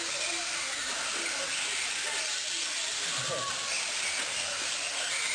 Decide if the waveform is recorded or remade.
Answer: recorded